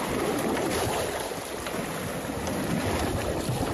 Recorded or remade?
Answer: recorded